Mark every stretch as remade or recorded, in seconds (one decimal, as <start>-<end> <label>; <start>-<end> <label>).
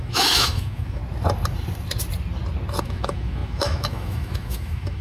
0.0-1.0 remade; 1.0-2.8 recorded; 2.8-5.0 remade